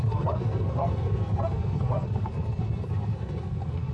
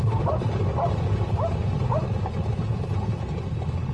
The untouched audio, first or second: second